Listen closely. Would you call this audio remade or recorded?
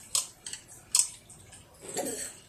recorded